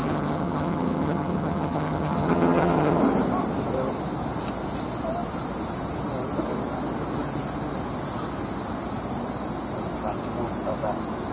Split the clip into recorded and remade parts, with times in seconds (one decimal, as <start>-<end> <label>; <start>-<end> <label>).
0.0-3.0 remade; 3.0-11.3 recorded